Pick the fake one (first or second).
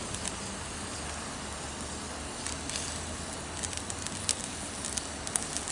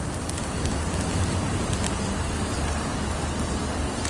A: second